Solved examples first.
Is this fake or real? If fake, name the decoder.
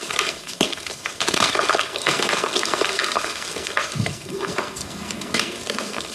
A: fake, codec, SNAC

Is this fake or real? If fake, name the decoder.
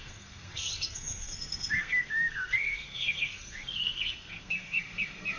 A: fake, codec, SNAC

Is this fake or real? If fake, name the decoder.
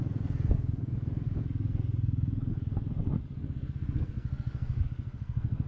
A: fake, codec, SNAC